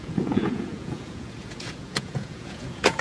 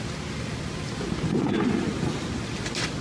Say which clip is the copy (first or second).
first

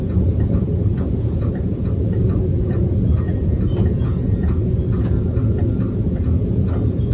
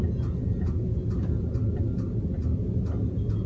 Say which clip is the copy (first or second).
first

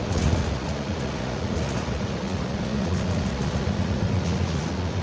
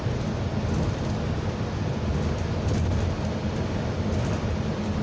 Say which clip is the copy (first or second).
first